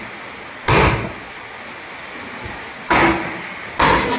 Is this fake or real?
real